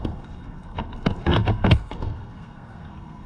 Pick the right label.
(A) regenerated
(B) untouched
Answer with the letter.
A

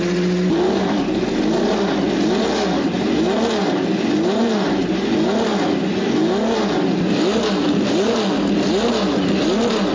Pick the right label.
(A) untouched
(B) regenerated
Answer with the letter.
A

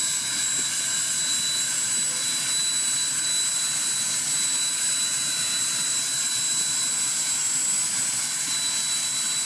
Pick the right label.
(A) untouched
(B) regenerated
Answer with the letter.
A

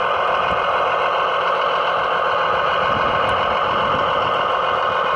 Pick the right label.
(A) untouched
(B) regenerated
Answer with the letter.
A